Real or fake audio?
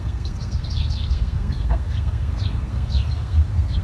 fake